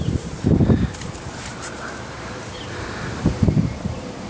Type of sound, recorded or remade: remade